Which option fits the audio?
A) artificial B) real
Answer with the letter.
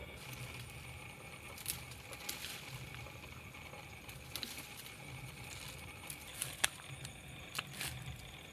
B